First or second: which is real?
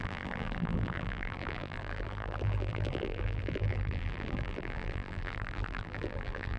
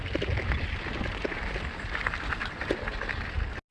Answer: second